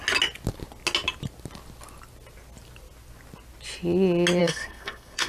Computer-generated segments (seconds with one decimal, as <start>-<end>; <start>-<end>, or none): 4.4-5.3

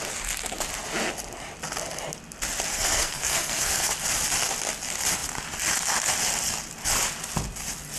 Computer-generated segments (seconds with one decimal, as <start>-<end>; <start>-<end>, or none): 2.7-3.9

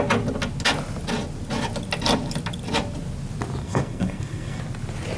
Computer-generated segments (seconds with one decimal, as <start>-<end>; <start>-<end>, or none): 3.6-4.6

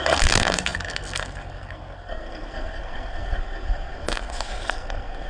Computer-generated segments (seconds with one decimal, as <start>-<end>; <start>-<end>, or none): 0.0-5.3

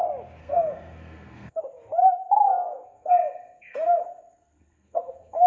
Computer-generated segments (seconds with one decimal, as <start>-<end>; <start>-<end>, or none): 0.4-1.6; 2.0-5.5